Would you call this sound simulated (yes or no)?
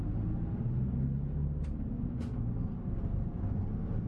no